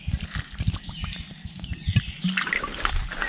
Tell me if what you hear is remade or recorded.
recorded